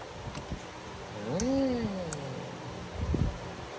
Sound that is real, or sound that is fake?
real